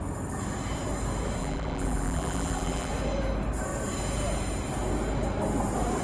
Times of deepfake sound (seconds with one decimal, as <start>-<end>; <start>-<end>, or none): 1.4-2.9